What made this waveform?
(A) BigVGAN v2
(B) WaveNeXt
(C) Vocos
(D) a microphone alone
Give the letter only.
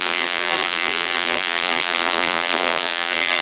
A